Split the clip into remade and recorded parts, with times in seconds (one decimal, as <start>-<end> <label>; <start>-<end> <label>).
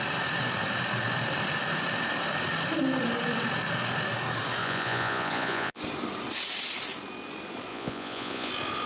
0.0-4.6 recorded; 4.6-5.8 remade; 5.8-7.7 recorded; 7.7-8.5 remade; 8.5-8.9 recorded